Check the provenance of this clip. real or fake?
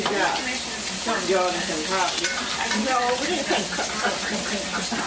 real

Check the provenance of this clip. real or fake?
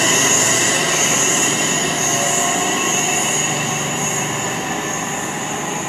real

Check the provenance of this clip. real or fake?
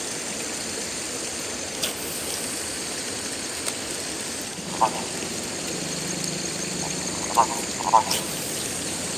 real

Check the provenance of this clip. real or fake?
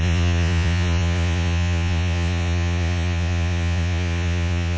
fake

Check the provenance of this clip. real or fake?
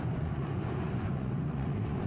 fake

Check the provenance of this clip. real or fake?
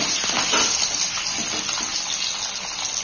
real